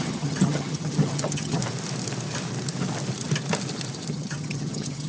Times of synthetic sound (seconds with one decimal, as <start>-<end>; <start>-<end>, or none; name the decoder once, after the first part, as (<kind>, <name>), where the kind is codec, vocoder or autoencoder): 0.0-1.6 (vocoder, HiFi-GAN); 4.1-5.1